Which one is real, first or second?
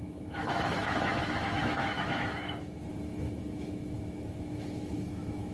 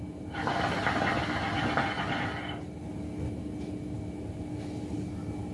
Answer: second